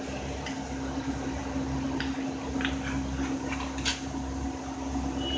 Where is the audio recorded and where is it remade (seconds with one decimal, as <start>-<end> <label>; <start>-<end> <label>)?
0.0-5.4 recorded